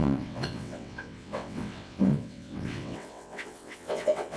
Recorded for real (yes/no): no